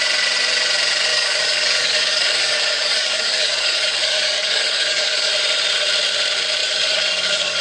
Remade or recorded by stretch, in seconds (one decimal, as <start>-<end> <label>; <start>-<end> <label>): 0.0-1.1 recorded; 1.1-5.3 remade; 5.3-6.6 recorded; 6.6-7.6 remade